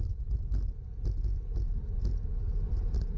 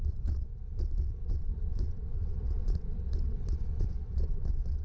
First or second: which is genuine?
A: first